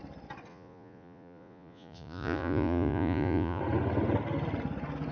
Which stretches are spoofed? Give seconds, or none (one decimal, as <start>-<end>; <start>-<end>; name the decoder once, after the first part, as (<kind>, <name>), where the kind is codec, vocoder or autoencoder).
0.5-3.6 (vocoder, Vocos)